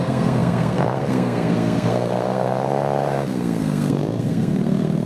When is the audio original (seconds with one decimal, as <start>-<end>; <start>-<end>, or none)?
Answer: none